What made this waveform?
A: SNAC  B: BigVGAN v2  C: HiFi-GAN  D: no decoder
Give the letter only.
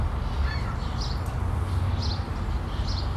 D